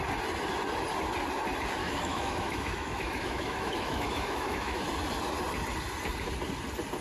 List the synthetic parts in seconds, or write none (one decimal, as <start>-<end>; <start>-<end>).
1.8-4.8